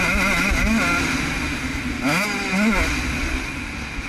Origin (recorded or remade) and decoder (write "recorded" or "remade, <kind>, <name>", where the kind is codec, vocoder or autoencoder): recorded